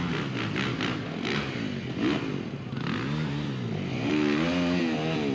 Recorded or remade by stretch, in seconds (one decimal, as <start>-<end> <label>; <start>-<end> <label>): 0.0-5.3 recorded

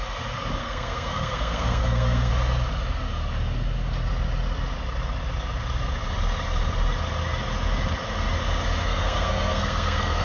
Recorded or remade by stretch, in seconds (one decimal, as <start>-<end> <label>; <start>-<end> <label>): 0.0-0.6 recorded; 0.6-2.3 remade; 2.3-8.8 recorded; 8.8-10.2 remade

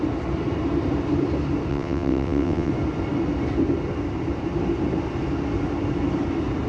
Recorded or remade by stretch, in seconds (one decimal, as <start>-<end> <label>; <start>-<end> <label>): 0.0-1.7 recorded; 1.7-2.7 remade; 2.7-6.7 recorded

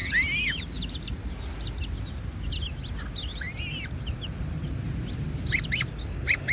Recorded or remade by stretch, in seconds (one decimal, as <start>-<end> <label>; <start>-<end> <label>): 0.0-6.5 recorded

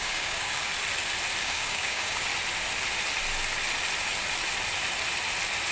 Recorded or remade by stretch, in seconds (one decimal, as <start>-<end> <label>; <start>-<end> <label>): 0.0-0.7 remade; 0.7-1.4 recorded; 1.4-2.3 remade; 2.3-5.7 recorded

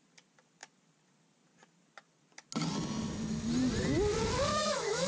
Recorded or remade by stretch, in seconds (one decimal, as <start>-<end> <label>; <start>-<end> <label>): 0.0-4.5 recorded; 4.5-5.1 remade